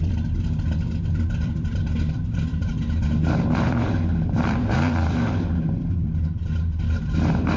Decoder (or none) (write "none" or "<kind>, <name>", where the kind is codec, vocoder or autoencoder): vocoder, BigVGAN v2